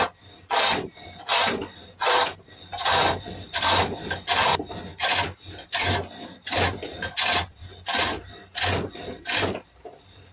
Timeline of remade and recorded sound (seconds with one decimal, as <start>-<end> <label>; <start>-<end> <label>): 0.0-10.3 recorded